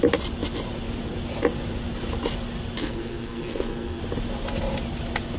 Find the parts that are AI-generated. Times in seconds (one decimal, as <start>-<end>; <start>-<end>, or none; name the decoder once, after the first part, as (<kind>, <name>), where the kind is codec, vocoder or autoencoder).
2.8-4.0 (codec, SNAC)